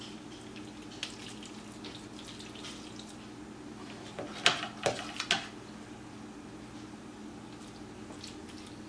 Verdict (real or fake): real